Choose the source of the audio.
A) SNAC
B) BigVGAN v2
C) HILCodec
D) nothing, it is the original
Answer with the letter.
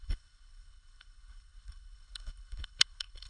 C